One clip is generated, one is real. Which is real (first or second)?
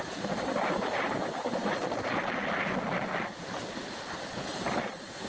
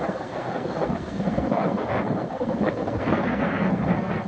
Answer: first